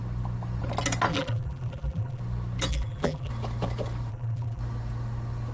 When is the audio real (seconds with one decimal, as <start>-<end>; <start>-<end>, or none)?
0.0-1.1; 2.2-2.7; 3.3-4.1; 4.6-5.5